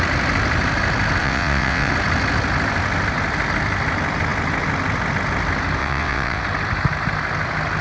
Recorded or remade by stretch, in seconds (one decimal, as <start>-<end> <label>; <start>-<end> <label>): 0.0-1.2 recorded; 1.2-1.9 remade; 1.9-5.8 recorded; 5.8-6.4 remade; 6.4-7.8 recorded